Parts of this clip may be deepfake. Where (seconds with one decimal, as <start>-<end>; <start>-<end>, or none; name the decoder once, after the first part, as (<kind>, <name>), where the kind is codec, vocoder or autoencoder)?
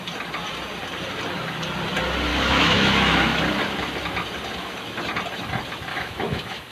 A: 2.3-3.4 (autoencoder, DAC-VAE); 5.9-6.7